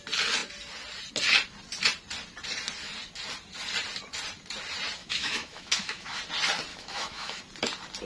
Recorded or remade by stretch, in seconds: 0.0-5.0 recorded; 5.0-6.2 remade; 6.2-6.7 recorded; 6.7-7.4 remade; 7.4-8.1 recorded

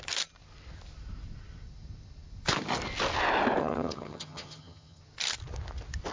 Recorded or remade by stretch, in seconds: 0.0-3.6 recorded; 3.6-5.0 remade; 5.0-6.1 recorded

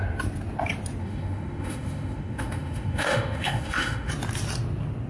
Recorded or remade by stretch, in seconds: 0.0-1.0 recorded; 1.0-4.1 remade; 4.1-5.1 recorded

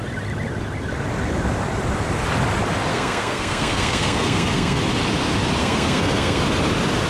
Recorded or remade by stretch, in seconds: 0.0-2.9 recorded; 2.9-4.8 remade; 4.8-5.6 recorded; 5.6-6.4 remade; 6.4-7.1 recorded

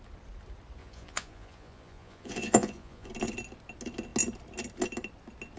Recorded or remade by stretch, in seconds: 0.0-0.8 recorded; 0.8-3.1 remade; 3.1-5.6 recorded

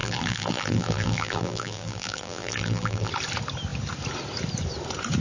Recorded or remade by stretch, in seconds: 0.0-3.1 remade; 3.1-5.2 recorded

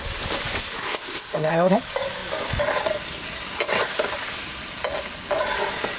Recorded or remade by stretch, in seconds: 0.0-0.8 recorded; 0.8-1.7 remade; 1.7-6.0 recorded

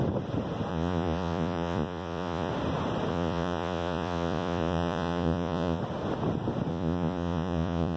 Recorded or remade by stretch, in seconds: 0.0-0.7 recorded; 0.7-2.5 remade; 2.5-3.1 recorded; 3.1-5.8 remade; 5.8-6.7 recorded; 6.7-8.0 remade